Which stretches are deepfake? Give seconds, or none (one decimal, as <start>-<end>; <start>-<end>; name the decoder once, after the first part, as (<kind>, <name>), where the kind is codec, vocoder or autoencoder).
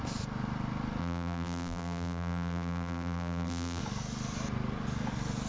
1.0-3.8 (vocoder, BigVGAN v2)